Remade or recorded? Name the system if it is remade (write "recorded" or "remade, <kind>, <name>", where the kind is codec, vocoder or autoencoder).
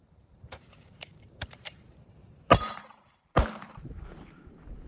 remade, vocoder, BigVGAN v2